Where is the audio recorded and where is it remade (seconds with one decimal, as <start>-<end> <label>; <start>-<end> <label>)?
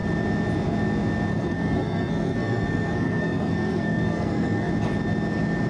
0.0-1.3 recorded; 1.3-4.7 remade; 4.7-5.7 recorded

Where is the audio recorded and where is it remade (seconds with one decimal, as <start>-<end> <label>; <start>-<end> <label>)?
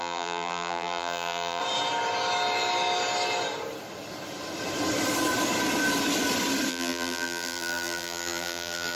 0.0-1.6 remade; 1.6-6.7 recorded; 6.7-9.0 remade